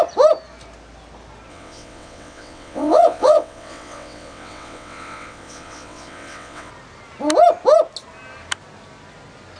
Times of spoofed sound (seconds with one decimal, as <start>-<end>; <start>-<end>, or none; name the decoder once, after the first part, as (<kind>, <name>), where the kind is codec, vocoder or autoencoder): 1.5-6.7 (vocoder, WaveNeXt)